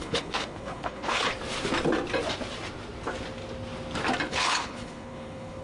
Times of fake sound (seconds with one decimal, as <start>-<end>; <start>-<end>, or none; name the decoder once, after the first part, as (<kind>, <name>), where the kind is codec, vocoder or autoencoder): 0.0-1.3 (codec, HILCodec); 4.3-5.6